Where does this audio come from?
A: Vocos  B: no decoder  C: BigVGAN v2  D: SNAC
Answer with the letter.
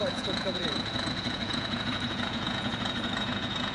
A